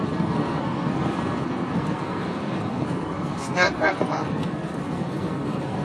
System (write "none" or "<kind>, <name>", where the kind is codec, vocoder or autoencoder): codec, SNAC